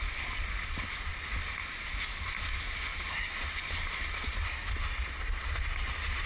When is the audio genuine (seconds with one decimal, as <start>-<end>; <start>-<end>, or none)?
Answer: 0.0-6.3